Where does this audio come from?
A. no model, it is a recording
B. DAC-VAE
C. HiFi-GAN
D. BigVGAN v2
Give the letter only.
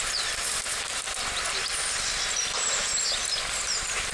A